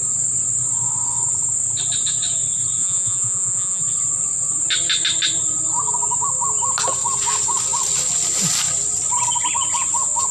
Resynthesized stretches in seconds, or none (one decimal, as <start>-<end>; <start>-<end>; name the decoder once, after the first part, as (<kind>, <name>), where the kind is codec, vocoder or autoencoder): 2.8-3.8 (vocoder, Vocos)